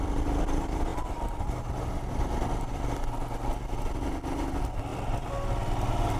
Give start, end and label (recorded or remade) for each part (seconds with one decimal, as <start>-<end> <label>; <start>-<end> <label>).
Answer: 0.0-0.9 recorded; 0.9-2.2 remade; 2.2-6.2 recorded